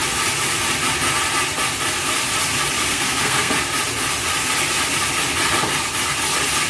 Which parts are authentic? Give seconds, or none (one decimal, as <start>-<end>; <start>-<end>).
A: 0.0-2.9; 3.5-6.7